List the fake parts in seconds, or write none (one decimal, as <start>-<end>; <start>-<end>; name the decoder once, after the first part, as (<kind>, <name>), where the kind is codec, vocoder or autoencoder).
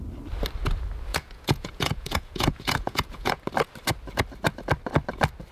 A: 1.1-3.4 (vocoder, Vocos)